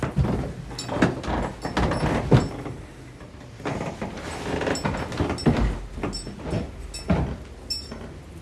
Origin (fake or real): real